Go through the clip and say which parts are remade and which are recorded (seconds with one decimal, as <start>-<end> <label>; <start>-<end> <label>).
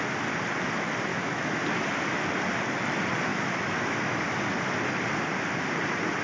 0.0-1.1 recorded; 1.1-1.6 remade; 1.6-3.3 recorded; 3.3-4.2 remade; 4.2-6.2 recorded